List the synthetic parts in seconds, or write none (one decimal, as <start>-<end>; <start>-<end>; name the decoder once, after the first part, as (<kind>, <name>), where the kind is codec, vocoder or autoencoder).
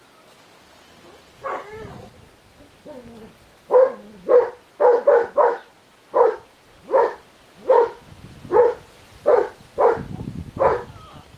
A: none